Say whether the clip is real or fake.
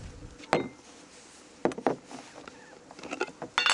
real